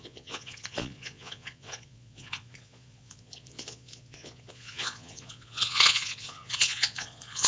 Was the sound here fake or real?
fake